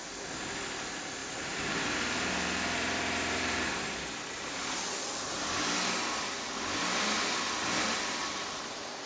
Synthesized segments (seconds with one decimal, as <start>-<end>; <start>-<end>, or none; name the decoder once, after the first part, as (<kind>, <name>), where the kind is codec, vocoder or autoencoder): 1.2-4.4 (vocoder, BigVGAN v2)